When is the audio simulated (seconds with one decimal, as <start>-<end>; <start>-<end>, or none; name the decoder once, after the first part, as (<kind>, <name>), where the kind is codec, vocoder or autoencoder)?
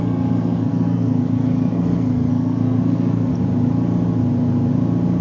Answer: 0.0-3.3 (codec, SNAC)